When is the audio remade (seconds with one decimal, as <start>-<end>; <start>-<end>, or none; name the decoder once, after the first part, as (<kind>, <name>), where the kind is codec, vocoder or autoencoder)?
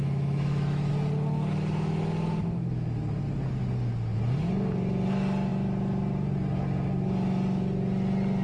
0.0-0.9 (autoencoder, DAC-VAE)